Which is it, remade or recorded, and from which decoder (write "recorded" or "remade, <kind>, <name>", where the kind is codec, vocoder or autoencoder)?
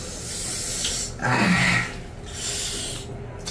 recorded